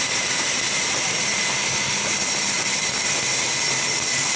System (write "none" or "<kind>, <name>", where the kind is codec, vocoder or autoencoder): none